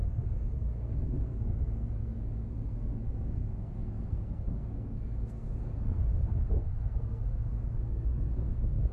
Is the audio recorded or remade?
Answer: remade